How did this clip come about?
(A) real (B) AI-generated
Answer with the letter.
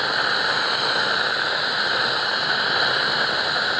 A